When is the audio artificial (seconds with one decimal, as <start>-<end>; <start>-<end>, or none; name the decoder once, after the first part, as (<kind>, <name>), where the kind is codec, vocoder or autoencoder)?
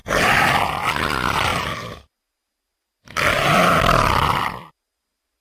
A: none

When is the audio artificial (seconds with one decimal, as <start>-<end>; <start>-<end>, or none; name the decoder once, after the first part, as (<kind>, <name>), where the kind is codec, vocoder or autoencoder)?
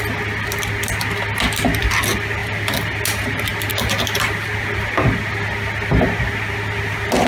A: none